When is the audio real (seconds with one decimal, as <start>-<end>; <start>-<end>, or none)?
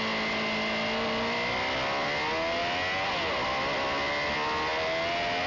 0.0-5.5